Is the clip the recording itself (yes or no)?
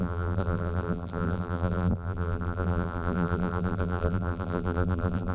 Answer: no